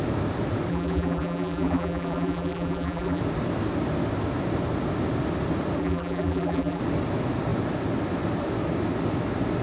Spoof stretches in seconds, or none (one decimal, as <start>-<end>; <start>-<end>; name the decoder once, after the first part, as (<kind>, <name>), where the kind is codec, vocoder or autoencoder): 0.7-3.2 (vocoder, BigVGAN v2); 5.8-6.8

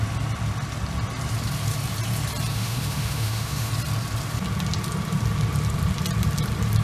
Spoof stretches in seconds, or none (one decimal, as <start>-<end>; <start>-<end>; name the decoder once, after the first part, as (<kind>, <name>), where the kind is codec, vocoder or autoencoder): 2.5-3.7 (autoencoder, DAC-VAE)

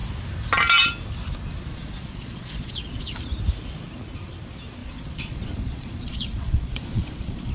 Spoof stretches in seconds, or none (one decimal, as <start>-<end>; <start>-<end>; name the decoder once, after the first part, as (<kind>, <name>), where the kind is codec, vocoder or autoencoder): 1.7-3.2 (vocoder, Vocos); 4.8-7.5

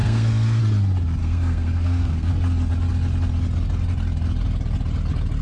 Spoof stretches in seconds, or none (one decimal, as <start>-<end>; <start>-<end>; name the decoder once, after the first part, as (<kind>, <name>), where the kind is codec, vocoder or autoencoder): 0.0-0.6 (codec, SNAC); 1.2-2.3